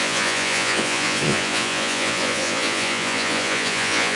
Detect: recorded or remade remade